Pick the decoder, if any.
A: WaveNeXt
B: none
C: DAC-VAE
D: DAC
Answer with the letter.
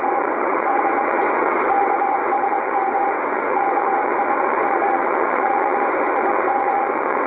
A